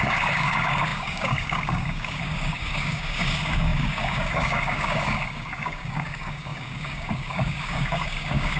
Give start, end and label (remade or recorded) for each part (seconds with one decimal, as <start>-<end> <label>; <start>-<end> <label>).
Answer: 0.0-8.6 remade